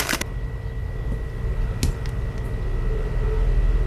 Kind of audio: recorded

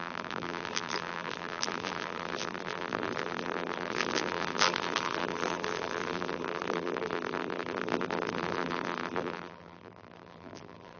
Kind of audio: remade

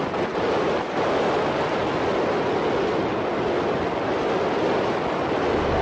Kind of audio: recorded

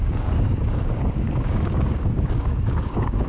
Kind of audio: remade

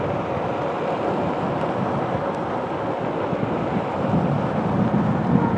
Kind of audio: recorded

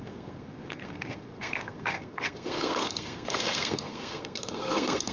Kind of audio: remade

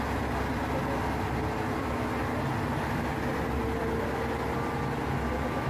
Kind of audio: recorded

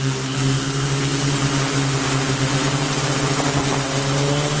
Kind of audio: recorded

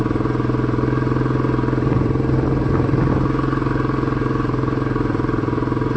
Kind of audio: recorded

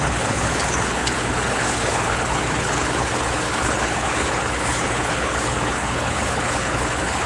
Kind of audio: remade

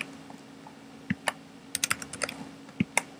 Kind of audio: recorded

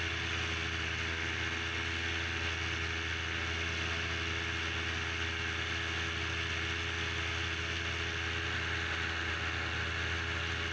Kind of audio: recorded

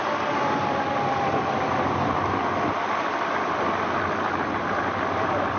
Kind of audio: remade